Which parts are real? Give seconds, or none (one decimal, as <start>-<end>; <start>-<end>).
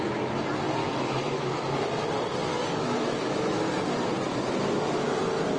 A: 0.0-0.8; 1.9-2.8; 3.6-5.6